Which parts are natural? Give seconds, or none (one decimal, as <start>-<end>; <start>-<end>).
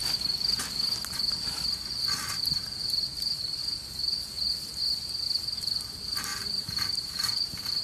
0.0-6.3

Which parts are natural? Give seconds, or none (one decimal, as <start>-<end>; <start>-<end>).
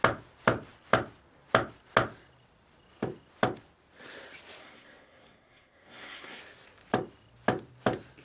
0.0-4.6; 6.4-8.2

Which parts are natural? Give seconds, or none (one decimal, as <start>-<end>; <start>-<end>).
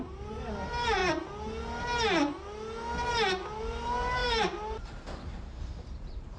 1.0-3.6